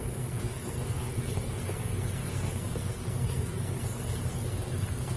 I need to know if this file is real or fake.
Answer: fake